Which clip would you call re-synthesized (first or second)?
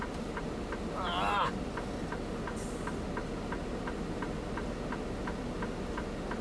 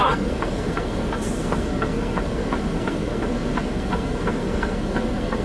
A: second